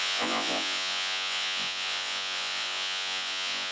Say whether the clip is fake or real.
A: fake